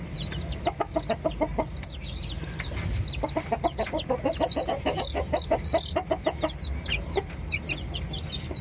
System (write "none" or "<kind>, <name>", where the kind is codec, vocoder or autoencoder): none